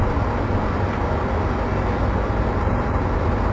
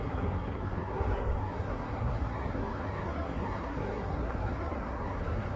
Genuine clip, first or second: first